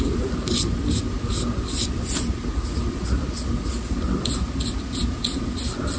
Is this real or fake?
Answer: real